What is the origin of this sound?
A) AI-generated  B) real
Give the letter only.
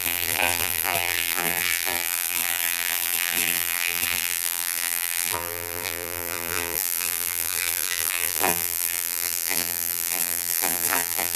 A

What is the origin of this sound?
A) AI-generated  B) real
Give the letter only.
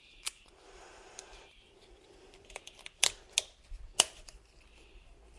B